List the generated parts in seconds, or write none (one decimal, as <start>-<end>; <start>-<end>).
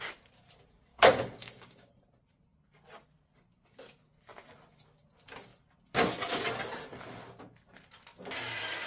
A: 0.9-1.9